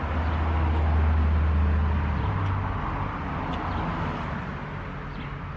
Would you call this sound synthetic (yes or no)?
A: no